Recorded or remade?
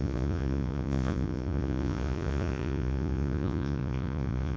remade